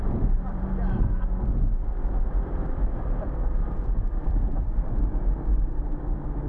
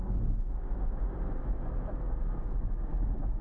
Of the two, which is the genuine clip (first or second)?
second